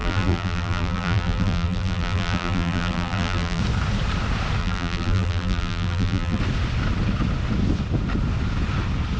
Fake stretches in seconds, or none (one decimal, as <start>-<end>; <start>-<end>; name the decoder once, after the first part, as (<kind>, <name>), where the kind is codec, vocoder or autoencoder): 0.0-3.6 (vocoder, BigVGAN v2); 4.6-6.4